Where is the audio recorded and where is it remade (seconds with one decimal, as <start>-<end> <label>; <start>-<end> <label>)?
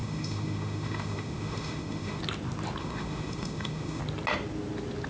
0.0-2.2 remade; 2.2-2.8 recorded; 2.8-4.0 remade; 4.0-5.1 recorded